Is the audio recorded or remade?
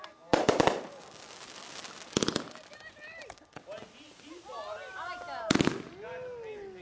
recorded